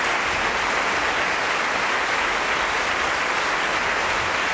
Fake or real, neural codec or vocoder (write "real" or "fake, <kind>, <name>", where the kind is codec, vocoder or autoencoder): real